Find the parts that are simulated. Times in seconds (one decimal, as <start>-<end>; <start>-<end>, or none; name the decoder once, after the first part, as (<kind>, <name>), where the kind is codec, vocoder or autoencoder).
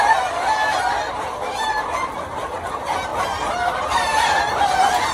0.0-3.1 (vocoder, BigVGAN v2); 3.7-5.1